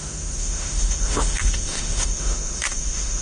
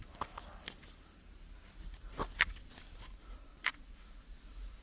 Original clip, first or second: second